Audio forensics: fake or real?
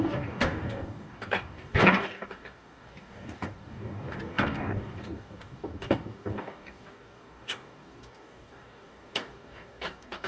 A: fake